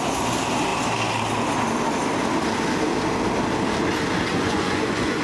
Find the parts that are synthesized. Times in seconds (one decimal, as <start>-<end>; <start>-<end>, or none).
4.3-5.2